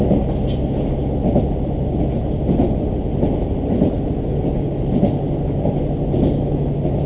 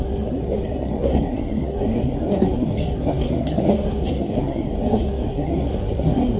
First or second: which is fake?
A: second